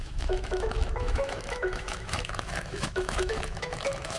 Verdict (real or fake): fake